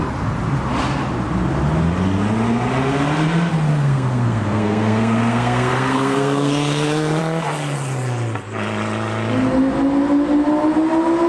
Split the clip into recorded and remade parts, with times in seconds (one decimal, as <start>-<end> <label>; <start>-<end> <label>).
0.0-3.7 recorded; 3.7-7.2 remade; 7.2-11.3 recorded